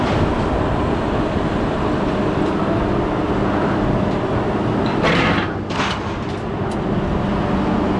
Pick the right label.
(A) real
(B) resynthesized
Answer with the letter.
A